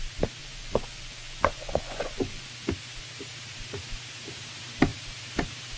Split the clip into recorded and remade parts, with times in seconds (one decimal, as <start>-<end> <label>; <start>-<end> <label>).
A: 0.0-0.4 recorded; 0.4-2.5 remade; 2.5-5.8 recorded